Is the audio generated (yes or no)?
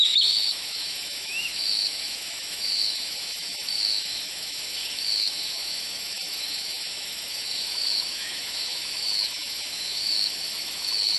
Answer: yes